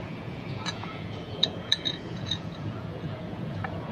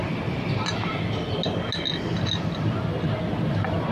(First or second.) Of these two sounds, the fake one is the first